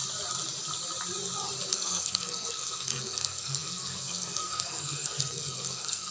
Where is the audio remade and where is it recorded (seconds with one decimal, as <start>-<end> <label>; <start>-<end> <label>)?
0.0-1.7 recorded; 1.7-6.1 remade